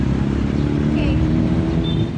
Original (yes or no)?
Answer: no